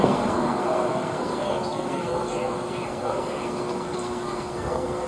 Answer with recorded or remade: remade